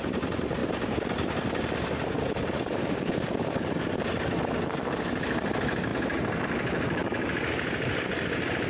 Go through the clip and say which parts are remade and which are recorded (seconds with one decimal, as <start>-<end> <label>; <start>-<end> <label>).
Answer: 0.0-0.6 recorded; 0.6-3.6 remade; 3.6-7.0 recorded; 7.0-8.2 remade; 8.2-8.7 recorded